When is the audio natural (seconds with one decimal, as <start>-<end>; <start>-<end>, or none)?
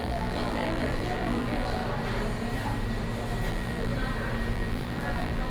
1.8-3.5; 3.9-4.5